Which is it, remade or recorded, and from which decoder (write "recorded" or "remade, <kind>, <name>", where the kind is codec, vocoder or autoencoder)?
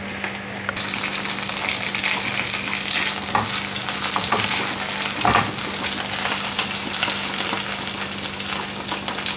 recorded